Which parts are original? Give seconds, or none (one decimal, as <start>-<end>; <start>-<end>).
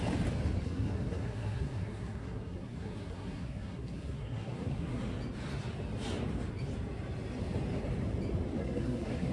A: 0.0-0.6; 5.0-8.6